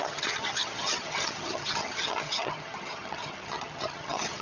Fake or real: fake